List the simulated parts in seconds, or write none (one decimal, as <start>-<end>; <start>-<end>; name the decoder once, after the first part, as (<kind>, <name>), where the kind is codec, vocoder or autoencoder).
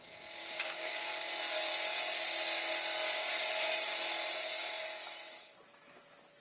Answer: 0.4-1.1 (codec, DAC)